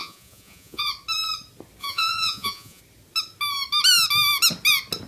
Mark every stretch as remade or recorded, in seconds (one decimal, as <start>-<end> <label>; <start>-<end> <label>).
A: 0.0-0.9 remade; 0.9-1.8 recorded; 1.8-2.8 remade; 2.8-5.1 recorded